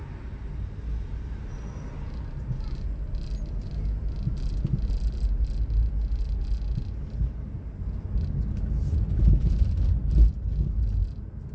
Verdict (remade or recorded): recorded